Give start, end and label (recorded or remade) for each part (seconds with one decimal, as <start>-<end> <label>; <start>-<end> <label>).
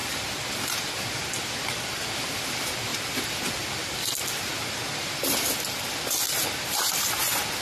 0.0-7.6 recorded